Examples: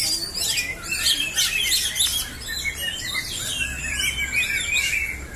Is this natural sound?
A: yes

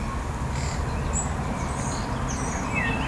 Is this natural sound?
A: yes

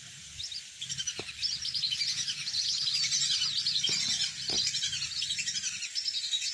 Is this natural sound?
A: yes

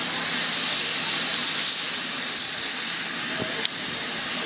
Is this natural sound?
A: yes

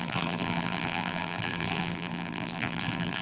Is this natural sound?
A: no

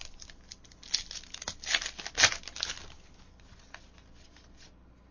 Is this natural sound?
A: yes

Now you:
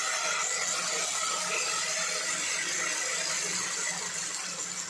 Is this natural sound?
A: yes